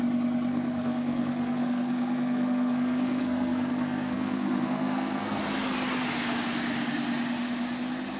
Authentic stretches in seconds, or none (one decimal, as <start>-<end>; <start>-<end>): 0.0-0.5; 5.4-8.2